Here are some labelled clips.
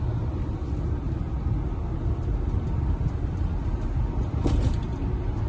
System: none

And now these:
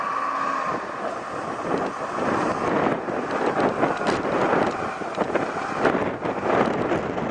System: none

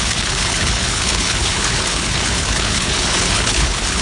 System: codec, HILCodec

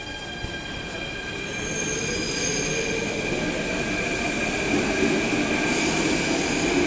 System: none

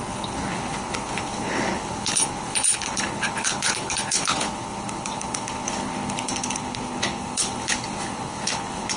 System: codec, HILCodec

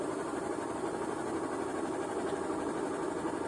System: none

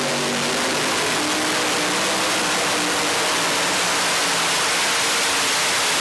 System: none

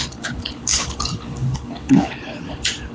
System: codec, HILCodec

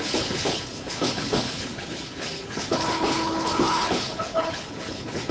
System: codec, HILCodec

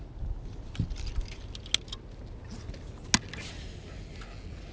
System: none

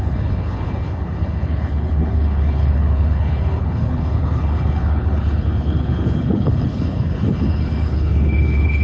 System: codec, HILCodec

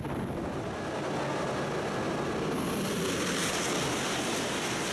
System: none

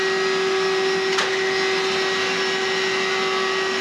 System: none